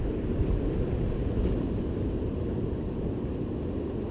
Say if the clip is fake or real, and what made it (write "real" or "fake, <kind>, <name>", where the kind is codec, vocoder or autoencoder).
real